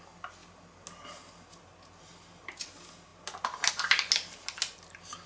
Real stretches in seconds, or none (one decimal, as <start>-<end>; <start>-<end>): 0.0-5.3